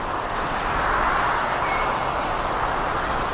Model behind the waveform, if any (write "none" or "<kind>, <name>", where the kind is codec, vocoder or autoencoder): none